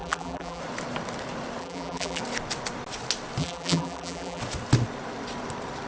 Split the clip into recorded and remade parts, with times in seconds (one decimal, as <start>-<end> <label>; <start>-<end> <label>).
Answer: 0.0-0.6 remade; 0.6-1.6 recorded; 1.6-2.2 remade; 2.2-3.4 recorded; 3.4-4.4 remade; 4.4-5.9 recorded